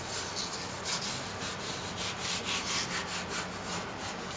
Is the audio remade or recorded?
recorded